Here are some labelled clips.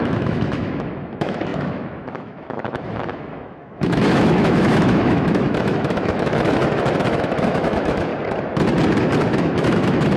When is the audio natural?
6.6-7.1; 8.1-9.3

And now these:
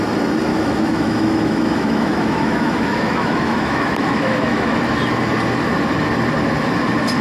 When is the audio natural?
0.0-0.5; 4.8-7.2

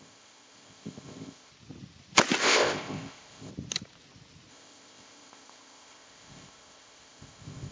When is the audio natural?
1.5-2.4; 3.5-4.5

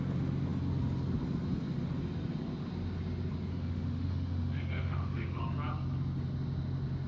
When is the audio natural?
0.0-3.5; 5.4-7.1

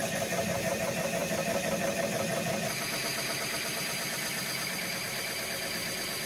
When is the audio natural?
0.0-1.2; 2.0-6.3

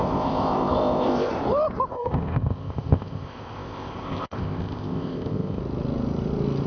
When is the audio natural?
1.3-1.9; 5.6-6.7

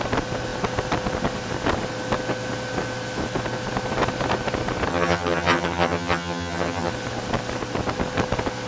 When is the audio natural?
0.0-4.9; 6.9-8.7

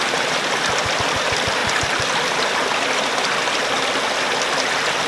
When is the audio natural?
0.0-5.1